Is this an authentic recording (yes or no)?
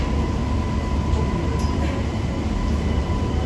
yes